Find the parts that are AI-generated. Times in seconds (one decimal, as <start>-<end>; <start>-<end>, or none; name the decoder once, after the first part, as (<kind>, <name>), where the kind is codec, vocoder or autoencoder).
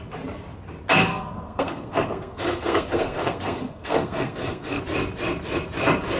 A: 1.1-4.8 (codec, SNAC)